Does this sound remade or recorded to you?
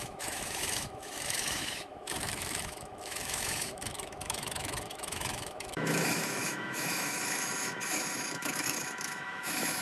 remade